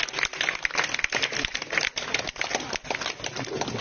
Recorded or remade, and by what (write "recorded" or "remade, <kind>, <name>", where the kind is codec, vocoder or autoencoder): recorded